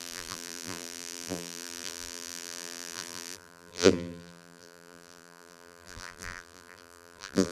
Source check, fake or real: fake